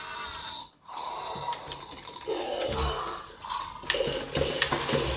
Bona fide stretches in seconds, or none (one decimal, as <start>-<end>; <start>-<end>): 0.0-0.6; 1.1-5.2